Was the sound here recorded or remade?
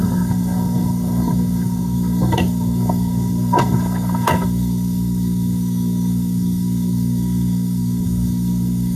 remade